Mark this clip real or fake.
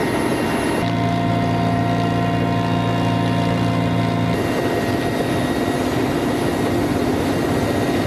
real